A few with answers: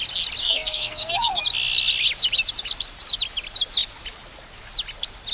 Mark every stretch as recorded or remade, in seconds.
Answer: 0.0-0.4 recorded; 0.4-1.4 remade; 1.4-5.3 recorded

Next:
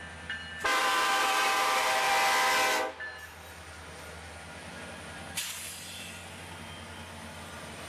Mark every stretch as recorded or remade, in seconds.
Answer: 0.0-0.8 recorded; 0.8-2.1 remade; 2.1-7.9 recorded

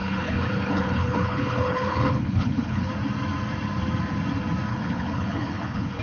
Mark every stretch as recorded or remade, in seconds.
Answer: 0.0-2.9 remade; 2.9-4.7 recorded; 4.7-6.0 remade

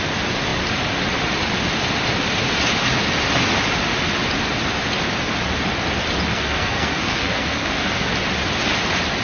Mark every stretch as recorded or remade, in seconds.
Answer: 0.0-6.3 recorded; 6.3-8.1 remade; 8.1-9.2 recorded

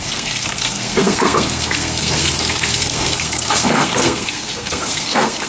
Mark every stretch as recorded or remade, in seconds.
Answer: 0.0-5.5 remade

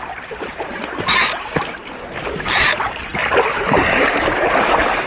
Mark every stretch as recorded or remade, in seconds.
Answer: 0.0-5.1 recorded